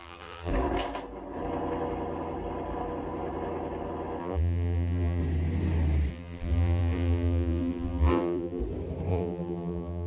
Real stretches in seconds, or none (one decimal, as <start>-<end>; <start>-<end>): 0.5-4.2; 5.2-6.1; 8.6-9.1